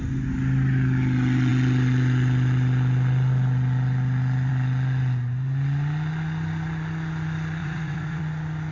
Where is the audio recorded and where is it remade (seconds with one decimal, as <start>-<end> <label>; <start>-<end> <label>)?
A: 0.0-7.6 recorded; 7.6-8.2 remade; 8.2-8.7 recorded